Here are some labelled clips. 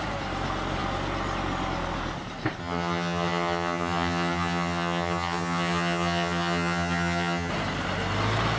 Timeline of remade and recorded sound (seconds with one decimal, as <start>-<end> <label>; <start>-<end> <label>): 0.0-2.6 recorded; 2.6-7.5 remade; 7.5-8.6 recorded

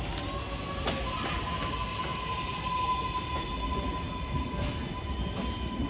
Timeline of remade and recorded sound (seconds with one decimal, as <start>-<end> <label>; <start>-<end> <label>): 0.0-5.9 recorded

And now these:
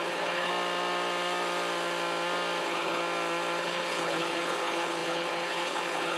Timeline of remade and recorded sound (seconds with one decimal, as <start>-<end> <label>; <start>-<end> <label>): 0.0-0.5 remade; 0.5-2.6 recorded; 2.6-3.0 remade; 3.0-3.6 recorded; 3.6-6.2 remade